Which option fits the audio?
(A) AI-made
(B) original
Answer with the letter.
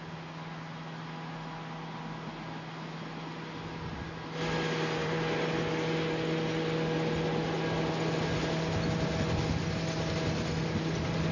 B